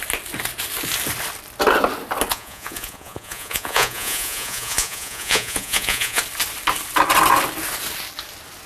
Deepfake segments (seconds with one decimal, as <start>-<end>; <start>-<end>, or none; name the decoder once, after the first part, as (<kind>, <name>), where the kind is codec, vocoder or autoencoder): 2.3-6.2 (vocoder, Vocos)